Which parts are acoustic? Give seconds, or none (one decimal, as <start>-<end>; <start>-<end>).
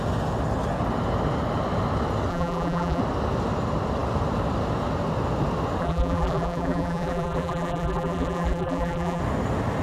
0.0-2.3; 3.0-5.8; 9.2-9.8